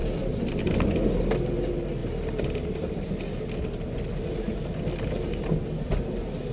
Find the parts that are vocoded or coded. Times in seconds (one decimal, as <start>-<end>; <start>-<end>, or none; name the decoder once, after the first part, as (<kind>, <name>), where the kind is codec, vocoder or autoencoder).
none